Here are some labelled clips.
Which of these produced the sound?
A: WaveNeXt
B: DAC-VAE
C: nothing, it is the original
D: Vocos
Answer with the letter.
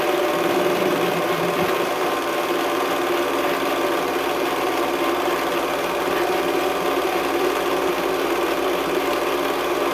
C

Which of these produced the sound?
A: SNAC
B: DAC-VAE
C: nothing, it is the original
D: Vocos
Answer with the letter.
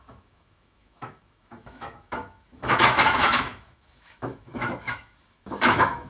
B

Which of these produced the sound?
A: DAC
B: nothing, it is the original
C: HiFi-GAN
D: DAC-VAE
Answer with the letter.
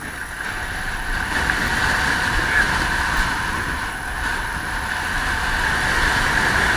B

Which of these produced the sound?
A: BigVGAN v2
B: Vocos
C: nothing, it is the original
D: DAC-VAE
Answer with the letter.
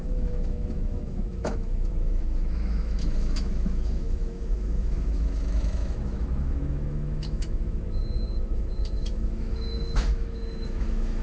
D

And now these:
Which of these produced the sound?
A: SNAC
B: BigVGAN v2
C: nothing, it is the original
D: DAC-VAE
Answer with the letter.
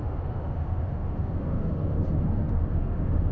D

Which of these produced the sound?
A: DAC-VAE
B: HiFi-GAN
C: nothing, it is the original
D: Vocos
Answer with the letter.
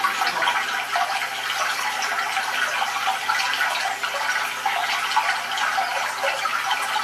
C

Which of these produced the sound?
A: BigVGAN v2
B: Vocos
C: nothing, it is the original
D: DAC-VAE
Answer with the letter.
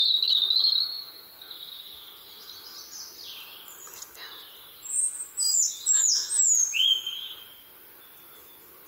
C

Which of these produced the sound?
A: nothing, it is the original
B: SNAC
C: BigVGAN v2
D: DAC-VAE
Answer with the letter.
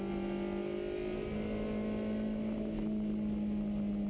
A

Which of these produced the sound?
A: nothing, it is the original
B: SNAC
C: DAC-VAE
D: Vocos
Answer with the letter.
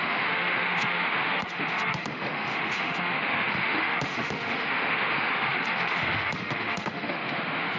C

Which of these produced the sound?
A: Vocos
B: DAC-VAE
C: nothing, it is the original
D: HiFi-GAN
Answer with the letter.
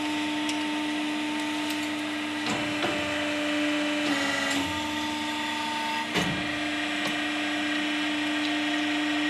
C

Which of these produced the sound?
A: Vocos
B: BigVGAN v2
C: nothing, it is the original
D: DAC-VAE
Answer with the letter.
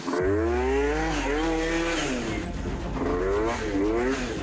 C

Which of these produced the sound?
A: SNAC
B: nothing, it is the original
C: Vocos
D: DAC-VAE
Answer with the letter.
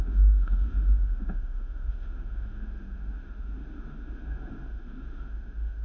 D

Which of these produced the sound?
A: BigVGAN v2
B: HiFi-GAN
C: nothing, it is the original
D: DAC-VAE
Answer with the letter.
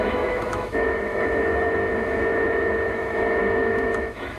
D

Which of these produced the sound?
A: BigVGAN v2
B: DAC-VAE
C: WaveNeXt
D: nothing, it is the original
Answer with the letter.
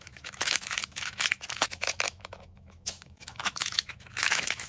B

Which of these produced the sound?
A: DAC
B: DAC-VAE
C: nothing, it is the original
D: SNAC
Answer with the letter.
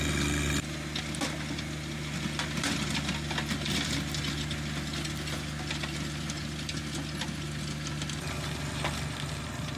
C